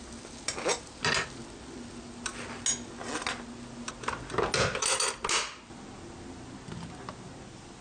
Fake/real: real